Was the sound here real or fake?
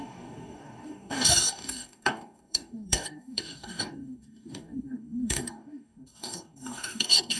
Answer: fake